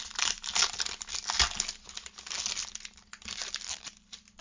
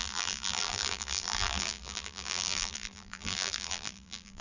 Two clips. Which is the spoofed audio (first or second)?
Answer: second